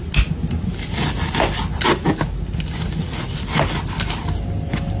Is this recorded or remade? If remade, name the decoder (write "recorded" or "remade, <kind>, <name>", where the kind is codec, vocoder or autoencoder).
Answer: recorded